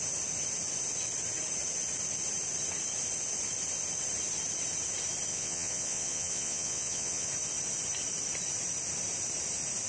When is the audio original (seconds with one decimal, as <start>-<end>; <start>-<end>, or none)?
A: 0.0-5.3; 7.3-9.9